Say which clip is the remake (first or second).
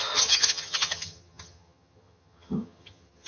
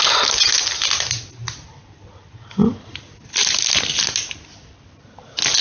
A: first